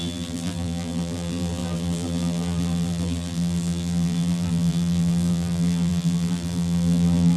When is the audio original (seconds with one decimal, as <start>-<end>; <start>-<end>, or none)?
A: none